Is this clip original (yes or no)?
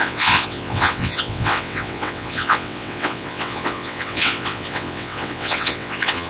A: no